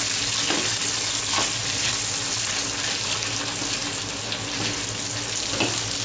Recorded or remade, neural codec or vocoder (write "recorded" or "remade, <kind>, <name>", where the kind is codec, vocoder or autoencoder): recorded